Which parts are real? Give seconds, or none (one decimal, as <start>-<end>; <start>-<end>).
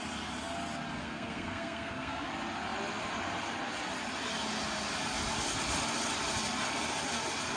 0.0-1.0; 2.3-7.6